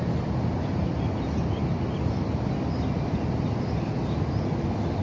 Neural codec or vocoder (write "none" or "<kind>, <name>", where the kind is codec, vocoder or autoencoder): none